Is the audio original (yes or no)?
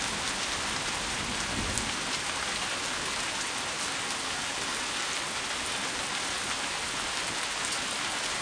yes